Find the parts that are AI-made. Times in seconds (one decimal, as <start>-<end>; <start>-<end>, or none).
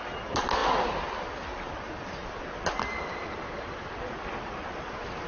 none